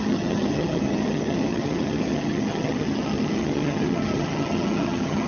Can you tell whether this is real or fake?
fake